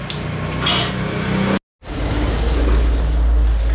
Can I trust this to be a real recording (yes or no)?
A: yes